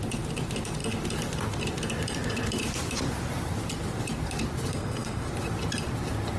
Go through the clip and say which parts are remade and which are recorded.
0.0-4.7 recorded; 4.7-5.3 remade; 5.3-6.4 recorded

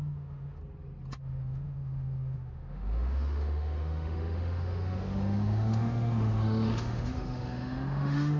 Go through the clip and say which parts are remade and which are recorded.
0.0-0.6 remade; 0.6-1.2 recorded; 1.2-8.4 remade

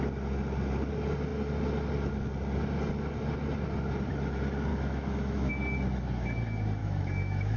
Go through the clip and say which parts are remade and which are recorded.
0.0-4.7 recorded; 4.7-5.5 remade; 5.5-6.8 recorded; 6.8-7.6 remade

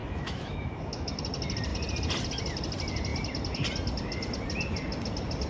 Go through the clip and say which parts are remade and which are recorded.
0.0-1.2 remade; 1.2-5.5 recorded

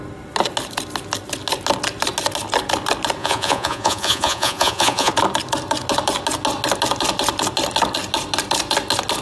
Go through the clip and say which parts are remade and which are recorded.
0.0-3.2 recorded; 3.2-5.1 remade; 5.1-9.2 recorded